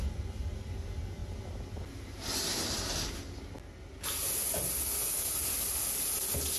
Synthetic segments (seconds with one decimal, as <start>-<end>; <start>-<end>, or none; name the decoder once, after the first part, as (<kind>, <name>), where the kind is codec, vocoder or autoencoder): none